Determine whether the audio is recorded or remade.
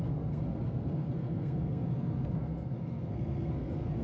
remade